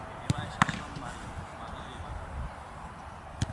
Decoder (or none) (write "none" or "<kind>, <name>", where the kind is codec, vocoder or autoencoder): none